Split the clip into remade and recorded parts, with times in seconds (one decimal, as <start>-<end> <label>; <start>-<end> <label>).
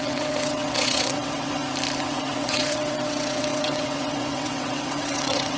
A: 0.0-1.6 remade; 1.6-2.1 recorded; 2.1-5.6 remade